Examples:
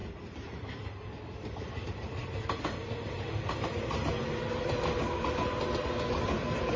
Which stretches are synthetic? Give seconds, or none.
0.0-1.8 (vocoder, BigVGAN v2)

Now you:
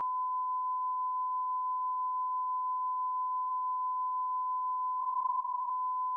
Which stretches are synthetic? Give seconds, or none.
5.0-5.7 (codec, HILCodec)

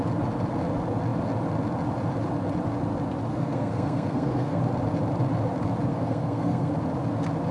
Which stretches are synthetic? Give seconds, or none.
3.3-4.6 (codec, SNAC); 5.9-6.7

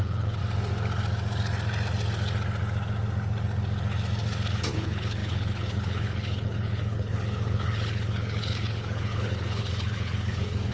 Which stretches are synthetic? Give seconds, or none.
0.0-0.4 (codec, HILCodec); 4.7-10.7